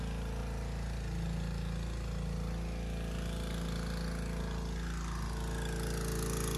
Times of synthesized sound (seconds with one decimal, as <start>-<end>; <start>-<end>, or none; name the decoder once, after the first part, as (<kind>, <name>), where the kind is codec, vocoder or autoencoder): none